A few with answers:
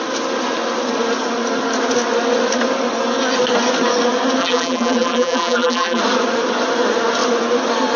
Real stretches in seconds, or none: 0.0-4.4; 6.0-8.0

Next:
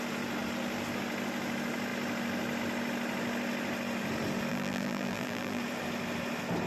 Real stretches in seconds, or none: 0.0-4.5; 5.6-6.7

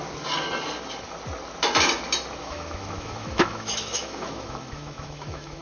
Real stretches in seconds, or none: 0.0-2.4

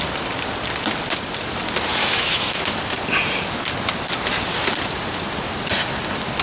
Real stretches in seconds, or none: 0.0-2.0; 2.6-6.4

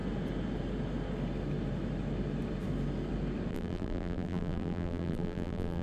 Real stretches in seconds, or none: 0.0-3.5